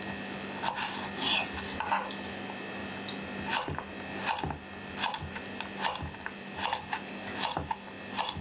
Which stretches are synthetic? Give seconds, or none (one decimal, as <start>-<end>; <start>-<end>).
none